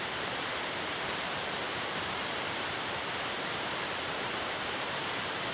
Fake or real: fake